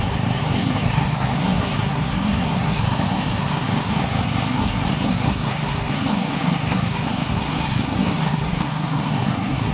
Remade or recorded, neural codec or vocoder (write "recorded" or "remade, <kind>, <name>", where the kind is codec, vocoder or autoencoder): remade, codec, SNAC